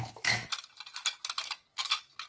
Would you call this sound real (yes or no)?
yes